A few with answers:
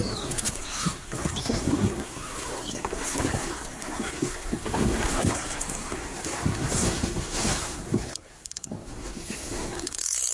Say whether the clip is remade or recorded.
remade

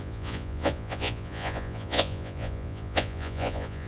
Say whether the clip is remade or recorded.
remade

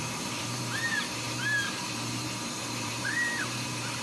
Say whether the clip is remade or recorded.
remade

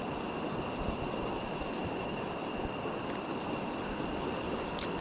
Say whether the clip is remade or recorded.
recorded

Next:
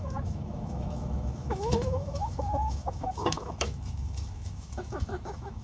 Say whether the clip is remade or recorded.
remade